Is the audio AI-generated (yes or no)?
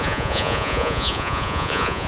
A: yes